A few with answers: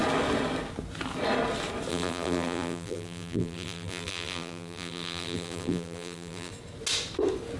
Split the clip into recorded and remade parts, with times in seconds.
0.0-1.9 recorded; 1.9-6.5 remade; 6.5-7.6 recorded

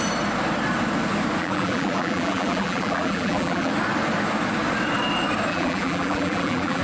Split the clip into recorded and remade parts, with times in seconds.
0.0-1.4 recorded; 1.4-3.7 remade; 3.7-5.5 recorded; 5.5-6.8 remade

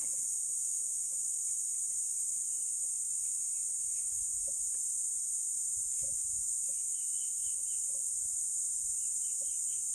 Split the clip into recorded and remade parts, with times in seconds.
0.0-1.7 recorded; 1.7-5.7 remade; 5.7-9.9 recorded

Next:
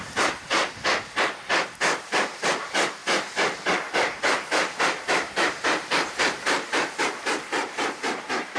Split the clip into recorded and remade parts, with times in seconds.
0.0-0.6 remade; 0.6-1.8 recorded; 1.8-3.0 remade; 3.0-3.8 recorded; 3.8-8.6 remade

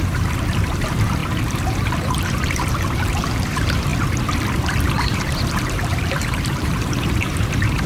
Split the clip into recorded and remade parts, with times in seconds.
0.0-3.9 remade; 3.9-5.0 recorded; 5.0-7.9 remade

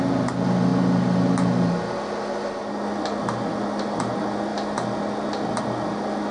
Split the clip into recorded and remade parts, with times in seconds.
0.0-6.3 recorded